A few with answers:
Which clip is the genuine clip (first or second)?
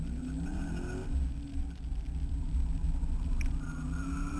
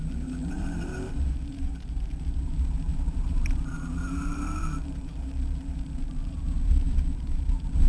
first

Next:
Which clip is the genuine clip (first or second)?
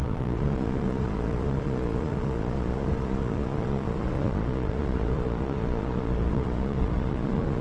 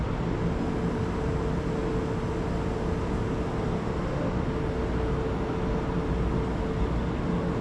second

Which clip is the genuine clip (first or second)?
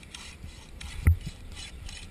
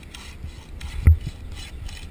second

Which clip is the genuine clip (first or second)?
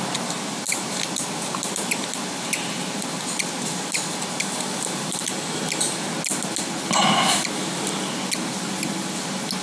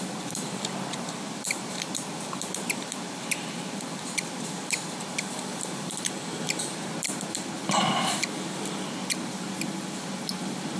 first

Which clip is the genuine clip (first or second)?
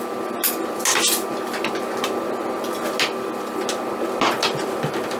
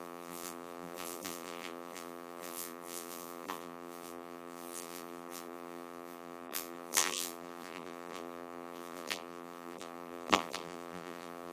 first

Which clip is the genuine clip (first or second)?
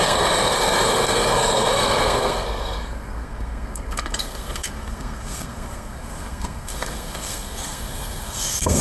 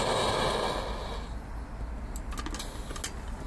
second